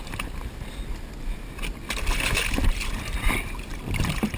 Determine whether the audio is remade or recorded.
recorded